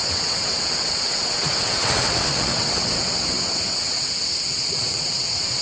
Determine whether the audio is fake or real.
fake